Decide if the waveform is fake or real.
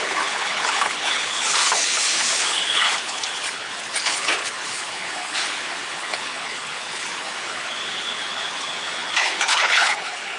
fake